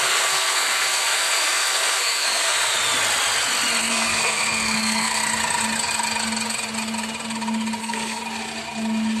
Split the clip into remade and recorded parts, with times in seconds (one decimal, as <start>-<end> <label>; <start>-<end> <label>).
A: 0.0-2.7 remade; 2.7-3.8 recorded; 3.8-5.2 remade; 5.2-7.8 recorded; 7.8-8.2 remade; 8.2-9.2 recorded